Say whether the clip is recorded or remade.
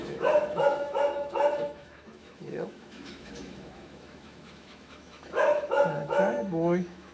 remade